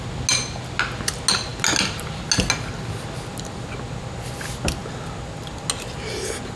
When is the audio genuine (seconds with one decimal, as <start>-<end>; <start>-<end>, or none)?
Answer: 0.0-6.6